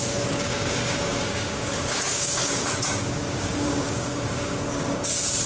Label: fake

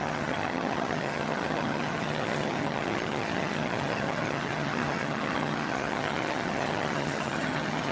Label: fake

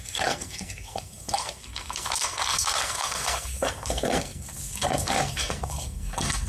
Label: fake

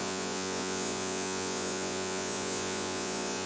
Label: fake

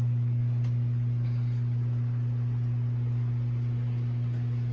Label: real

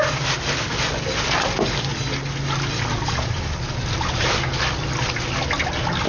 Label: real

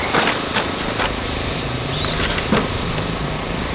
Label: real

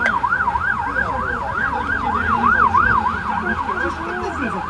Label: real